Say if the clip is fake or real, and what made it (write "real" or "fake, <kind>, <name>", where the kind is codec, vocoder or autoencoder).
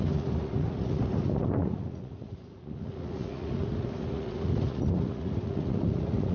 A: fake, vocoder, Vocos